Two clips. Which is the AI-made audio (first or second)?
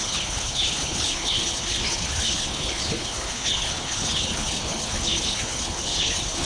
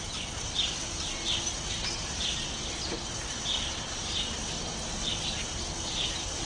first